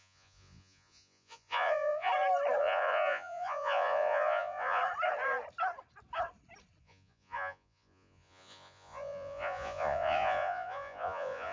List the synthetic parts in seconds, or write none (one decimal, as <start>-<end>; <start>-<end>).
0.0-2.1; 2.6-4.8; 6.8-11.5